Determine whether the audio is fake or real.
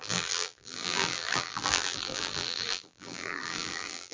fake